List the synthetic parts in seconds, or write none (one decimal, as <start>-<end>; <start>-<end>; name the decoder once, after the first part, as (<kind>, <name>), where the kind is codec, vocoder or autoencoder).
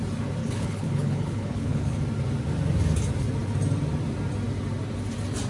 0.4-2.0 (codec, HILCodec)